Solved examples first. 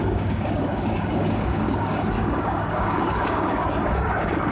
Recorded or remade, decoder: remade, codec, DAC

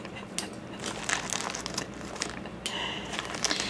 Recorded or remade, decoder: recorded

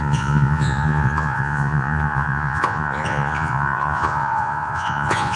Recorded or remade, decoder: remade, vocoder, Vocos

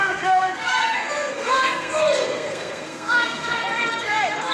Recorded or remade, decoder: remade, codec, SNAC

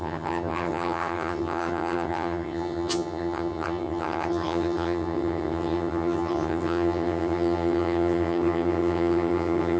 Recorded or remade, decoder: remade, vocoder, HiFi-GAN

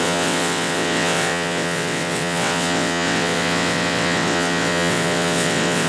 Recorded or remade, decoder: remade, vocoder, WaveNeXt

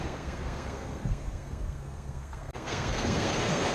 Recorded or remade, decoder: remade, codec, SNAC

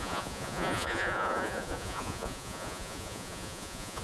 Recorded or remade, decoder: remade, vocoder, Vocos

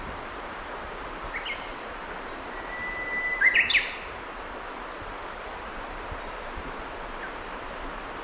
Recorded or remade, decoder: recorded